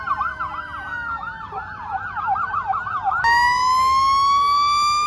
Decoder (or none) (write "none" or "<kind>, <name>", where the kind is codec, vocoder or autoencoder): none